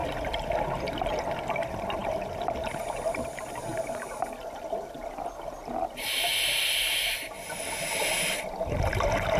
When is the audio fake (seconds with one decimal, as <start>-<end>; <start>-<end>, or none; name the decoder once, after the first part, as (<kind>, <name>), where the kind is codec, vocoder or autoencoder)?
none